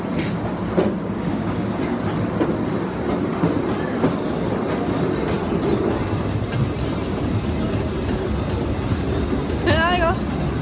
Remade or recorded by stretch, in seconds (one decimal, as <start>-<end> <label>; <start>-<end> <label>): 0.0-1.0 recorded; 1.0-1.8 remade; 1.8-10.6 recorded